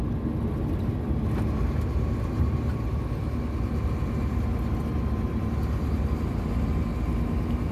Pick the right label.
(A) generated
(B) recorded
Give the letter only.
B